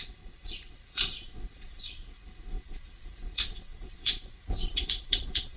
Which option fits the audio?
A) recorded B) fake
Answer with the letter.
B